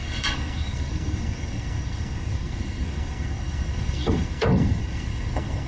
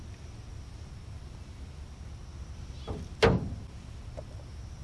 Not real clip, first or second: first